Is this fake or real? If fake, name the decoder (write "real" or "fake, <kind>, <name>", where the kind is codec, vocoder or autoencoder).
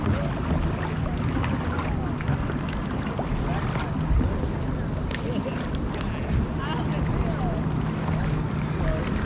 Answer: real